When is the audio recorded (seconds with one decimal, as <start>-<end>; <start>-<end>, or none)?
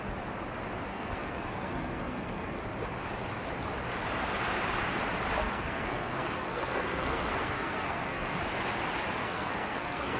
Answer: 0.0-0.9; 2.6-5.4; 8.4-9.2